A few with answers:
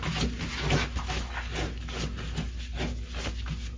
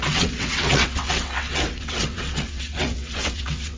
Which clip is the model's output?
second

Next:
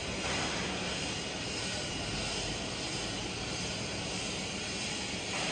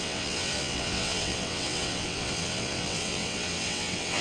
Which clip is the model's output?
second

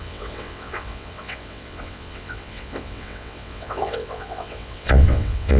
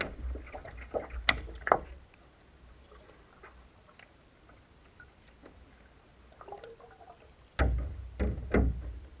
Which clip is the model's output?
first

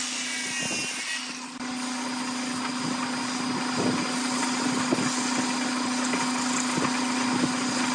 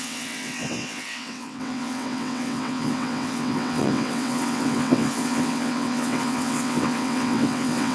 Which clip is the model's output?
second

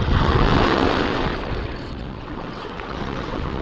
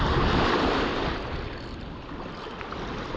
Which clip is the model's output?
first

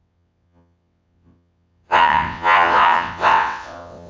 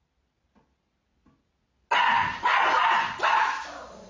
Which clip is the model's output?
first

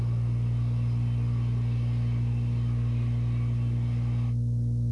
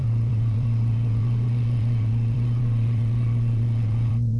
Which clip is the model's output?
second